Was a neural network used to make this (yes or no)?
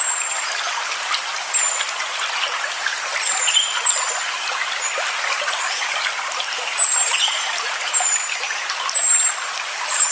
yes